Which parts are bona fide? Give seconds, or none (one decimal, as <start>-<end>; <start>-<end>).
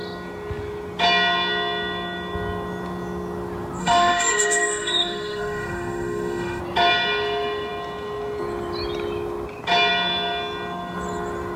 0.0-3.8; 6.6-11.6